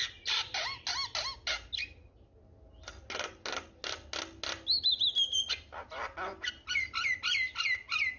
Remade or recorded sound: recorded